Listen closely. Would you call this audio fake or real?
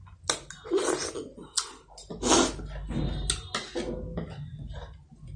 real